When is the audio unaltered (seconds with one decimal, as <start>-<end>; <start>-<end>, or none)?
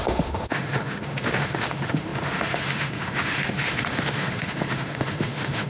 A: none